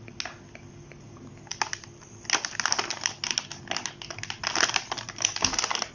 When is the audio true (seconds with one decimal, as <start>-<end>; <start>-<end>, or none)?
0.0-5.9